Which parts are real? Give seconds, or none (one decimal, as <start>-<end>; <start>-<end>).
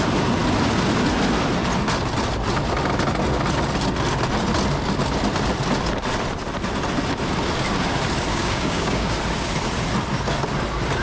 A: 0.0-8.3; 9.1-11.0